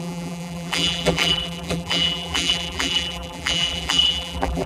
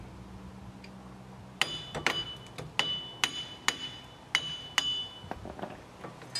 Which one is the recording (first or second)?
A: second